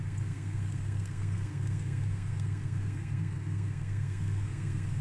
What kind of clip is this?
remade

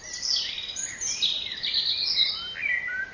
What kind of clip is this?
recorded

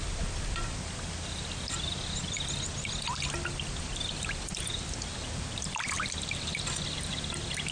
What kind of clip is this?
recorded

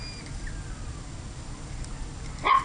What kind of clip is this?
recorded